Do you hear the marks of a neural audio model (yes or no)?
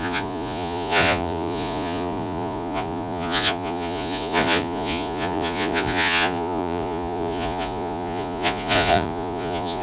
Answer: yes